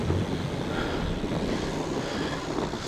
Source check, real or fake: real